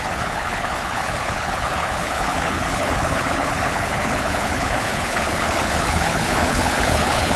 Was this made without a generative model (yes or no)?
no